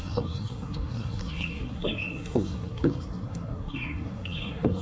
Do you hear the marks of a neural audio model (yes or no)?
yes